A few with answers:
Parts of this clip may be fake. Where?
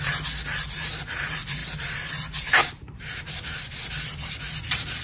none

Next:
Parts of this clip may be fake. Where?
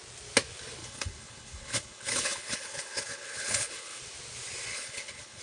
0.8-4.0 (codec, HILCodec); 4.7-5.4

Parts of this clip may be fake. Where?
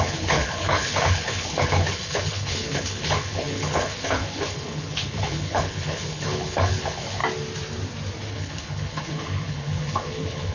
0.0-7.2 (codec, HILCodec); 8.3-10.5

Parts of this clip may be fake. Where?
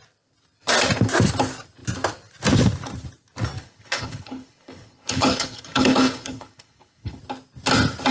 3.6-7.2 (codec, HILCodec)